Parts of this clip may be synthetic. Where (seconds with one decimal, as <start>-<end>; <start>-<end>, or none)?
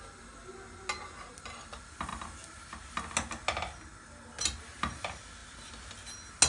none